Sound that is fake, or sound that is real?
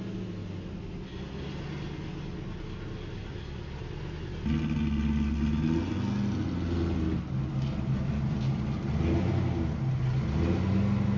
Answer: real